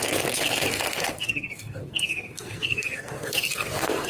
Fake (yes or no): yes